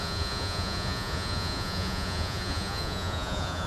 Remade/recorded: remade